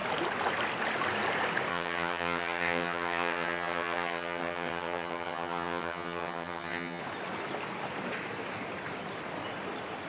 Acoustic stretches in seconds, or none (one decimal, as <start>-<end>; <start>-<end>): 0.0-1.7; 7.0-10.1